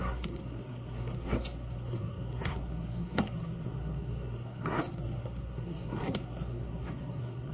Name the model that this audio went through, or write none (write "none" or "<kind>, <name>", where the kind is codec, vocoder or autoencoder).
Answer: codec, SNAC